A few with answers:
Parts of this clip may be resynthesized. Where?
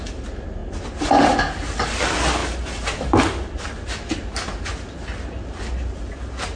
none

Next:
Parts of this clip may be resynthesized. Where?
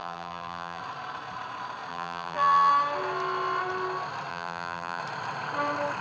0.0-0.8; 1.9-2.7; 4.3-5.0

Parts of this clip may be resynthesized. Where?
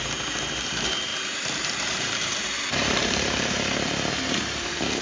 0.0-5.0